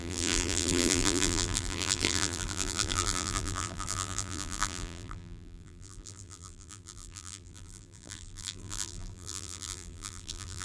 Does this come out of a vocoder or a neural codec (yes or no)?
yes